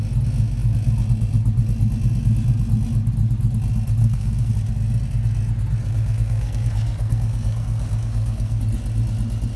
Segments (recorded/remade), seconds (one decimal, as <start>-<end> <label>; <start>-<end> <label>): 0.0-4.0 recorded; 4.0-4.5 remade; 4.5-5.8 recorded; 5.8-8.6 remade; 8.6-9.6 recorded

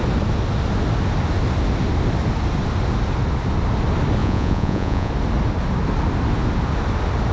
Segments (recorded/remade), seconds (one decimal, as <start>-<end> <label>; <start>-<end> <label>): 0.0-4.2 recorded; 4.2-5.1 remade; 5.1-7.3 recorded

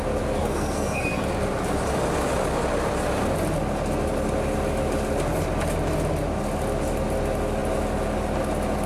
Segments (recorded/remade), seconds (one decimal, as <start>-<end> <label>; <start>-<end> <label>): 0.0-0.4 recorded; 0.4-1.2 remade; 1.2-8.9 recorded

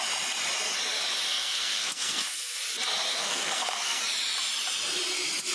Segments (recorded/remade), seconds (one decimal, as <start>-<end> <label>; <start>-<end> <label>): 0.0-1.3 recorded; 1.3-2.6 remade; 2.6-3.1 recorded; 3.1-4.0 remade; 4.0-5.5 recorded

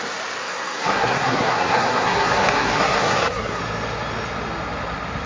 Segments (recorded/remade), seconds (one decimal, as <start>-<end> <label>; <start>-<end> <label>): 0.0-0.4 recorded; 0.4-3.6 remade; 3.6-5.3 recorded

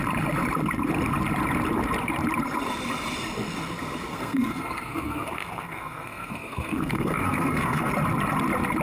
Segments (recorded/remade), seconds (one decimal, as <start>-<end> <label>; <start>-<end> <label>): 0.0-4.1 recorded; 4.1-7.9 remade; 7.9-8.8 recorded

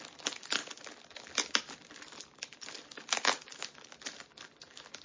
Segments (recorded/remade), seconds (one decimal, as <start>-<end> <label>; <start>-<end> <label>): 0.0-5.0 recorded

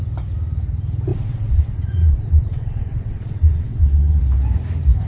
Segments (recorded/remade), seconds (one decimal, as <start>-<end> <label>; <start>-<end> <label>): 0.0-1.1 recorded; 1.1-4.2 remade; 4.2-5.1 recorded